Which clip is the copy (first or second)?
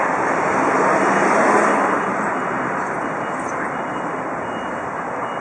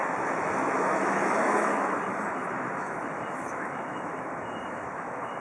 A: second